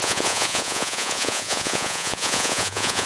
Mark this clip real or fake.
fake